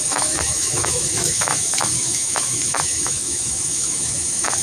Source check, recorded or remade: remade